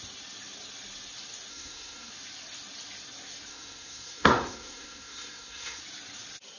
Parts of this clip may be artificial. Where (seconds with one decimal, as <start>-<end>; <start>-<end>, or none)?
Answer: 1.5-2.1; 3.5-5.8